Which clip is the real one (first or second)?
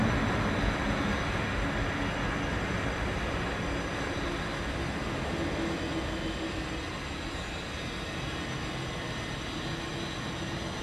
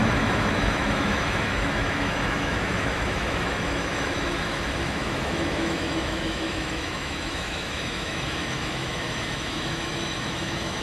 first